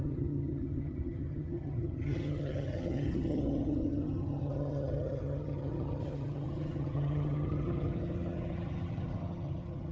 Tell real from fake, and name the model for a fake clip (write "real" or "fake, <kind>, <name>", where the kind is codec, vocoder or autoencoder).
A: fake, vocoder, HiFi-GAN